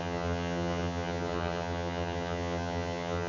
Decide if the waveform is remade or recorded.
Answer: remade